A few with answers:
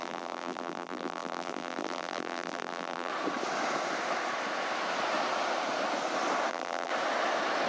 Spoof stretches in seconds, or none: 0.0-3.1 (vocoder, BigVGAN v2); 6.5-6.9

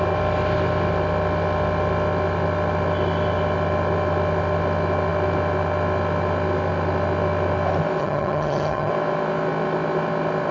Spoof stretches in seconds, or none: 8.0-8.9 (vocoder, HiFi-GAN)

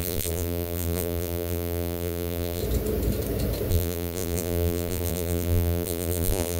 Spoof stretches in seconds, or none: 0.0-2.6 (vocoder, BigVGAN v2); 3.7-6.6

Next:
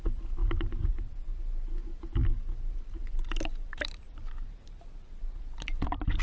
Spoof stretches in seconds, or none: 0.4-1.4 (vocoder, BigVGAN v2); 2.2-6.2